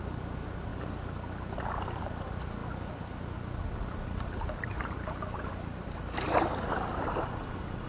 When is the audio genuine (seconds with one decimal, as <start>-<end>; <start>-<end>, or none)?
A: 0.7-2.0; 2.6-4.3